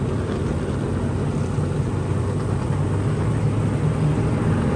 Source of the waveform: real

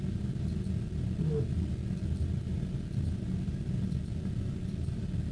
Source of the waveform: real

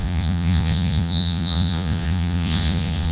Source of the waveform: fake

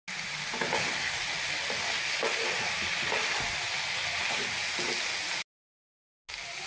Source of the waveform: real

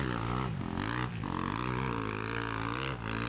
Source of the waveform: real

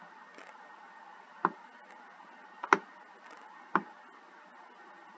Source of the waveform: real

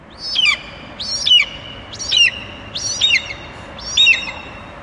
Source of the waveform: real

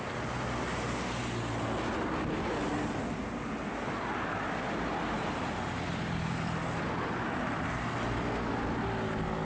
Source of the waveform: real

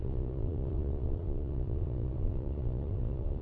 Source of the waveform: fake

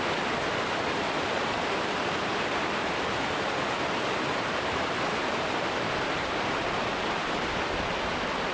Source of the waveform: real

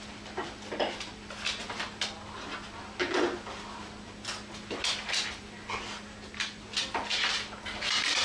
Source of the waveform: real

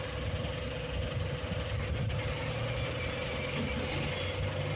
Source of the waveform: real